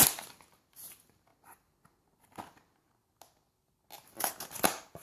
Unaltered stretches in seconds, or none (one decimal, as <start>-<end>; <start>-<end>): 0.0-5.0